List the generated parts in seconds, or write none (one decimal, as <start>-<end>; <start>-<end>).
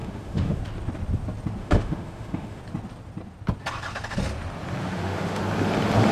0.0-0.6; 1.6-2.6; 4.8-5.4